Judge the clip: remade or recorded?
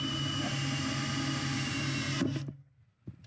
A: recorded